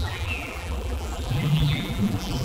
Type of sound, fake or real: fake